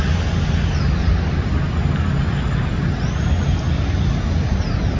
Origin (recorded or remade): recorded